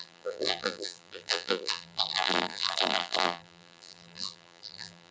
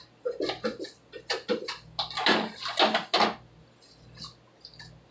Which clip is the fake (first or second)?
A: first